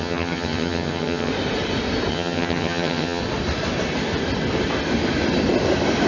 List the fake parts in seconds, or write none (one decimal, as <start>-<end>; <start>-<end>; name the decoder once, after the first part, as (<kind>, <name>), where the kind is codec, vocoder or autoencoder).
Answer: 0.0-1.3 (vocoder, HiFi-GAN); 2.1-3.2